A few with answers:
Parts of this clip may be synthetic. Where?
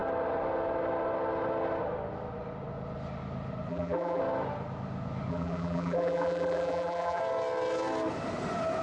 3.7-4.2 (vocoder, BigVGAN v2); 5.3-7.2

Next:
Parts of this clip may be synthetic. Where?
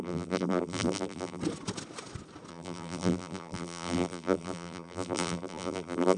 0.0-1.4 (vocoder, BigVGAN v2); 2.5-6.2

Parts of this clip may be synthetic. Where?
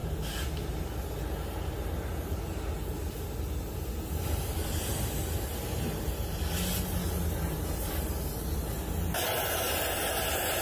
none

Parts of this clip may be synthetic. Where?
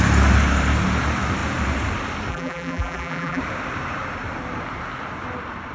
2.3-3.4 (vocoder, BigVGAN v2)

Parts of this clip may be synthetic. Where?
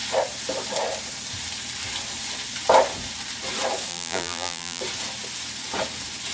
3.9-4.8 (vocoder, BigVGAN v2)